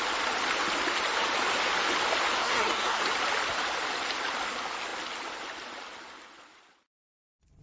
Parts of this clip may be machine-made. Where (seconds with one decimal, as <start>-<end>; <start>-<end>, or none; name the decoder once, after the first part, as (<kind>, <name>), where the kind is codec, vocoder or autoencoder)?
2.4-3.0 (codec, SNAC)